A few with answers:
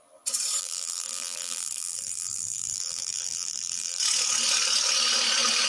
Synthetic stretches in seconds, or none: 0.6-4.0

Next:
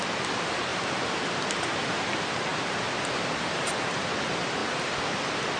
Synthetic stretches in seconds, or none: 0.7-1.4; 2.5-4.1

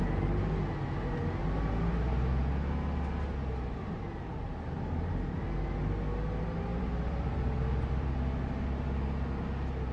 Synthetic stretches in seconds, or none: 6.7-8.4

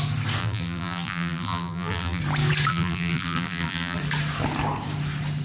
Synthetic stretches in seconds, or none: 0.4-2.2; 2.7-4.0

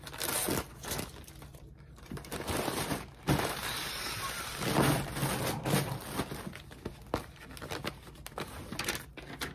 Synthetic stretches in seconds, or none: 1.5-4.5

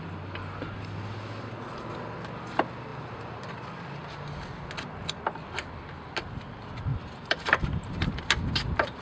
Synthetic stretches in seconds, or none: 6.9-8.1

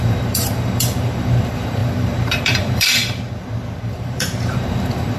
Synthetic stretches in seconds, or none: 0.0-3.0; 3.9-5.2